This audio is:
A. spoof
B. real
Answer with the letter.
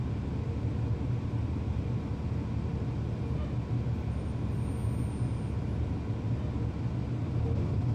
B